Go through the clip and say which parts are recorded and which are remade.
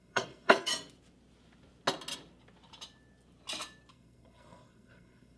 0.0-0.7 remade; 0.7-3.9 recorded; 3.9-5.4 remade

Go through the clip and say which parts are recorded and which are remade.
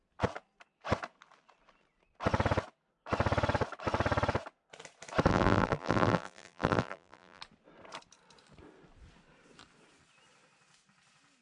0.0-5.3 recorded; 5.3-7.4 remade; 7.4-11.4 recorded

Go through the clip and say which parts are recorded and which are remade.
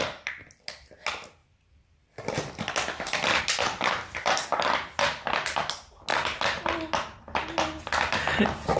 0.0-8.8 recorded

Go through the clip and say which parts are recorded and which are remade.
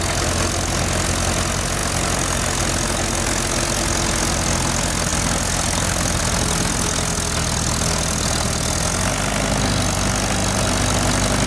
0.0-1.8 recorded; 1.8-2.6 remade; 2.6-5.1 recorded; 5.1-6.2 remade; 6.2-10.4 recorded; 10.4-11.5 remade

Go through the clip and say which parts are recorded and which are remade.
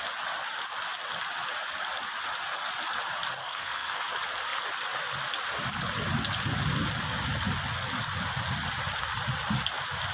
0.0-3.4 recorded; 3.4-4.0 remade; 4.0-10.1 recorded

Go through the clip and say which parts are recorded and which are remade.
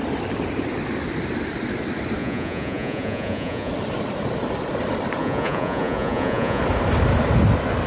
0.0-2.2 recorded; 2.2-3.7 remade; 3.7-5.2 recorded; 5.2-6.6 remade; 6.6-7.9 recorded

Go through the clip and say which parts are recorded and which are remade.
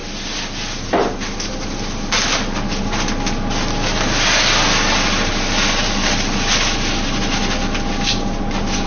0.0-8.9 recorded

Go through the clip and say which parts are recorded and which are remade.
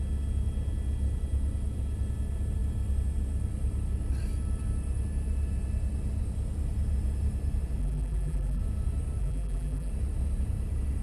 0.0-7.8 recorded; 7.8-8.6 remade; 8.6-9.2 recorded; 9.2-9.9 remade; 9.9-11.0 recorded